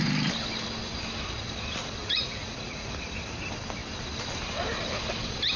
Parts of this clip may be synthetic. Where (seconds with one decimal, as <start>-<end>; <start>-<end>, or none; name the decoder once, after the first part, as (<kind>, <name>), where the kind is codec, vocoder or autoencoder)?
2.0-2.9 (vocoder, Vocos)